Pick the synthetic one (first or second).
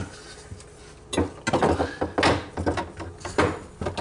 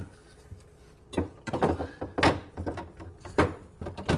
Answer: second